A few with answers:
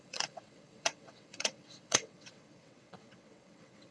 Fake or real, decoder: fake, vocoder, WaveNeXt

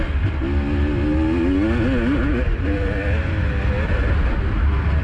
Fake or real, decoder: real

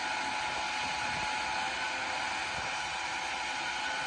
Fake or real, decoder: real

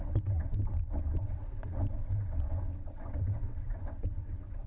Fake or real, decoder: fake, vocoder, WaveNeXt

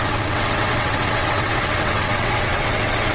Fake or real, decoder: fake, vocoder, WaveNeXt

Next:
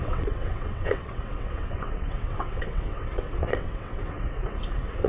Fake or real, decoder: fake, vocoder, WaveNeXt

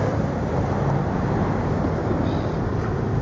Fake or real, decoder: real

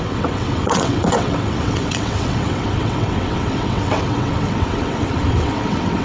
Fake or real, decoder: fake, vocoder, WaveNeXt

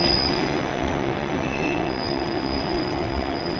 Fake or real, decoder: fake, vocoder, WaveNeXt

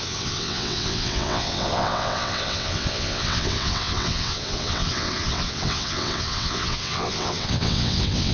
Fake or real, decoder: fake, vocoder, WaveNeXt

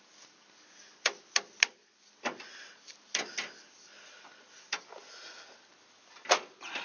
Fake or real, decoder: real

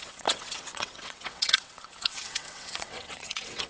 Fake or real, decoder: fake, vocoder, WaveNeXt